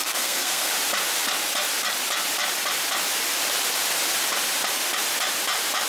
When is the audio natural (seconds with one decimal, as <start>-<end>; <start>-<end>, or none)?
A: 0.7-5.9